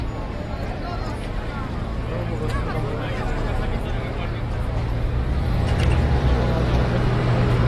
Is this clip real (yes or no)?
yes